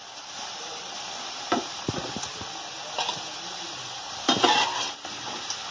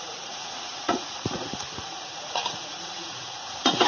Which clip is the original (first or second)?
first